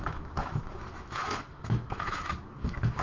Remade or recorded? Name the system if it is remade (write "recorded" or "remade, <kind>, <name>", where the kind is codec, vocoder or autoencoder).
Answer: remade, autoencoder, DAC-VAE